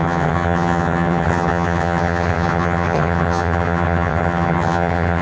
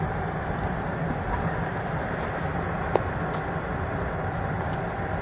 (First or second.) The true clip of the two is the second